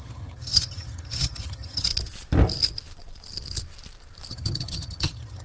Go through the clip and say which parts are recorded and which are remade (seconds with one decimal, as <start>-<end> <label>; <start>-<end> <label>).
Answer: 0.0-1.9 remade; 1.9-4.3 recorded; 4.3-5.4 remade